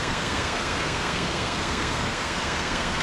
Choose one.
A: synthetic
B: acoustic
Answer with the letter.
A